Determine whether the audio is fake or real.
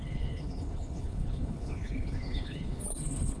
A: fake